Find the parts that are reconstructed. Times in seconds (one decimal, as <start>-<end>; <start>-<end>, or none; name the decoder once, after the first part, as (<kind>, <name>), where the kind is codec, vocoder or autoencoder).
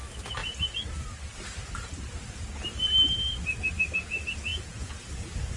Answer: 4.5-5.1 (vocoder, Vocos)